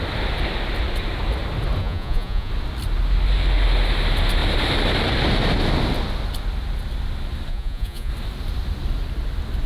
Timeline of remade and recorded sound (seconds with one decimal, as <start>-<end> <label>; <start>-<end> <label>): 0.0-1.8 recorded; 1.8-2.5 remade; 2.5-7.5 recorded; 7.5-8.1 remade; 8.1-9.7 recorded